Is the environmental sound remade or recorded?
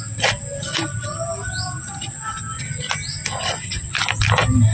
recorded